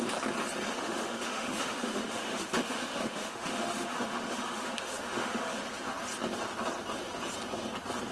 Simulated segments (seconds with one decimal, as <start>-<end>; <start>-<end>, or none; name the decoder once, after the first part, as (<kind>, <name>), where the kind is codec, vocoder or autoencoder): 0.7-5.6 (autoencoder, DAC-VAE)